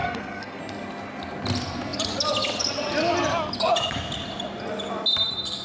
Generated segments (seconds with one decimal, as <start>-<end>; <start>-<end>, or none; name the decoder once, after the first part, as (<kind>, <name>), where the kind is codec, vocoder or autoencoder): 0.0-0.6 (codec, SNAC)